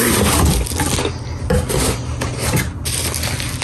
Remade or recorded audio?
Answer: recorded